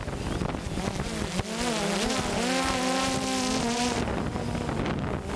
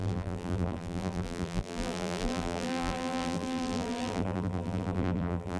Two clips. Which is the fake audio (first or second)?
second